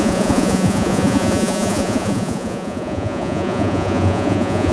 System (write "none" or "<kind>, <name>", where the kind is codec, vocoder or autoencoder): vocoder, Vocos